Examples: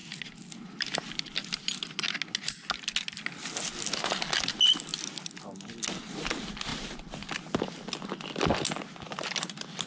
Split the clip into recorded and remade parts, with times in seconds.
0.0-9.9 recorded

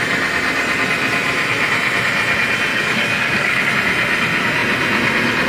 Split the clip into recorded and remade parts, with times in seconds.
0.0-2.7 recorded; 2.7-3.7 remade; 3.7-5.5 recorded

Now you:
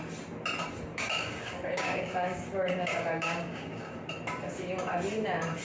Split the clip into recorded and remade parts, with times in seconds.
0.0-0.9 recorded; 0.9-3.9 remade; 3.9-5.6 recorded

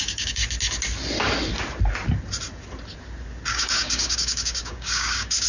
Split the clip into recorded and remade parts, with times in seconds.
0.0-0.4 remade; 0.4-3.5 recorded; 3.5-5.5 remade